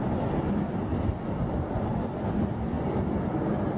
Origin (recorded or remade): recorded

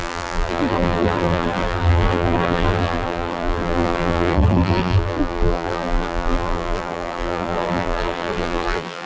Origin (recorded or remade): remade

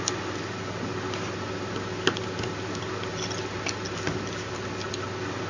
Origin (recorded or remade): recorded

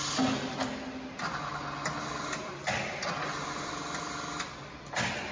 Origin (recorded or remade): recorded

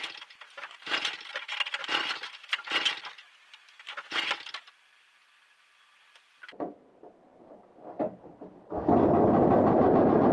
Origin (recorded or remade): recorded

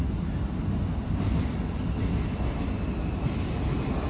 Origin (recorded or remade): recorded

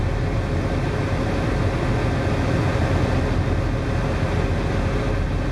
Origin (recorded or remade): recorded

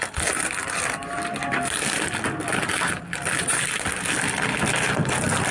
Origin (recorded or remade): recorded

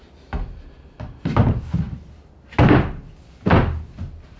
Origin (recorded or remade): recorded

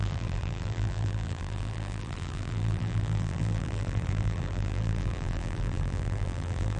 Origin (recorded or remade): remade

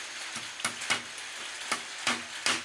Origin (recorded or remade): recorded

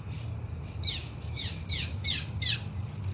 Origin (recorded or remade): recorded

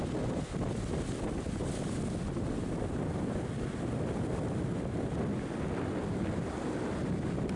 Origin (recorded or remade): recorded